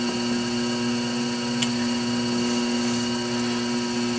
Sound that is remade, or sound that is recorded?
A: recorded